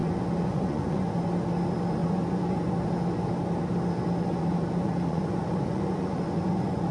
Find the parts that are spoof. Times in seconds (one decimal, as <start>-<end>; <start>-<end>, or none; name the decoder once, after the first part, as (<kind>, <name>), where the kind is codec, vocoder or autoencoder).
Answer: 0.0-1.1 (vocoder, Vocos); 2.0-2.7; 4.3-6.9

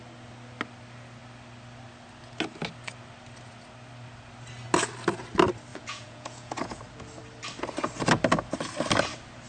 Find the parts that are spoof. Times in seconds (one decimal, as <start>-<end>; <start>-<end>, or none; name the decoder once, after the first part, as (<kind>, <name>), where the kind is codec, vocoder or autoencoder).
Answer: 5.7-6.8 (vocoder, Vocos)